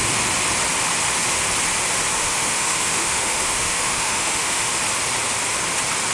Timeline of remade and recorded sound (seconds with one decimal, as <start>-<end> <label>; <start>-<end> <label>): 0.0-2.2 recorded; 2.2-4.8 remade; 4.8-6.1 recorded